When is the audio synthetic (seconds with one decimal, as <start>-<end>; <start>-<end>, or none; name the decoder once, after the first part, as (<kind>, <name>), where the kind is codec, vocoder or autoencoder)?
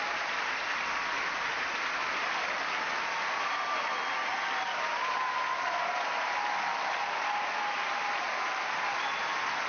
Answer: 2.0-2.8 (vocoder, BigVGAN v2); 4.3-7.0